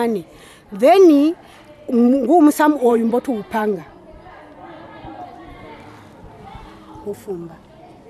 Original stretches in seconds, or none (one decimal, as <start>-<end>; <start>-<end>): 0.0-2.9; 3.8-8.1